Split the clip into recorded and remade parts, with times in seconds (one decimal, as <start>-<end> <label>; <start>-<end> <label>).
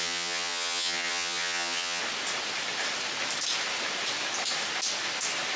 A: 0.0-2.0 remade; 2.0-5.6 recorded